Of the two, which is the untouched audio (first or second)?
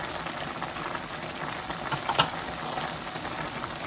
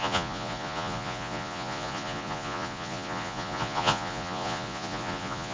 first